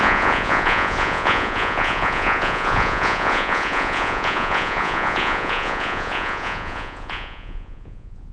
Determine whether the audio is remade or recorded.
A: remade